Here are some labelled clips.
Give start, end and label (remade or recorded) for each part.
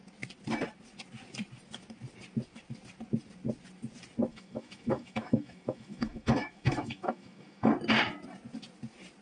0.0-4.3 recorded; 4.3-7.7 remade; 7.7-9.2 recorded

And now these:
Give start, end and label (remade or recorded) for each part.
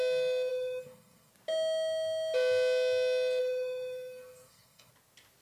0.0-0.5 recorded; 0.5-1.3 remade; 1.3-3.4 recorded; 3.4-4.9 remade; 4.9-5.4 recorded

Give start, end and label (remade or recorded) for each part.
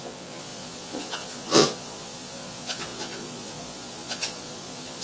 0.0-5.0 remade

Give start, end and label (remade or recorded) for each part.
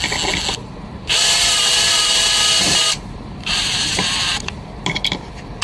0.0-1.0 recorded; 1.0-4.2 remade; 4.2-5.6 recorded